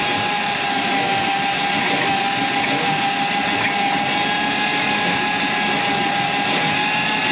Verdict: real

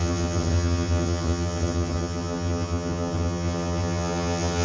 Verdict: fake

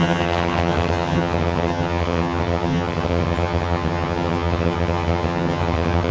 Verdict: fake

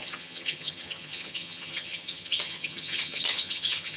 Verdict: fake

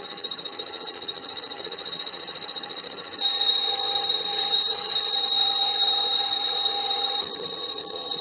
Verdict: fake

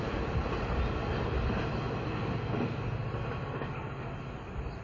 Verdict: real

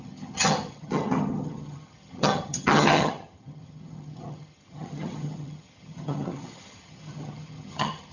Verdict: fake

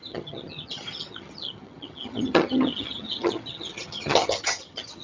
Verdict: fake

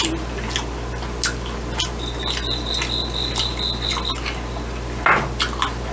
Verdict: real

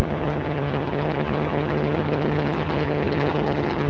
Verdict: fake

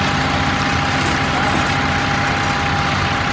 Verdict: real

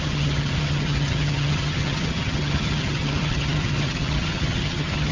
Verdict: fake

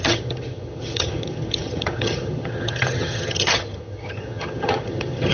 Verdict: fake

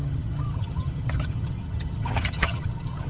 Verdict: fake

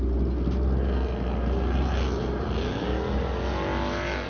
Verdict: real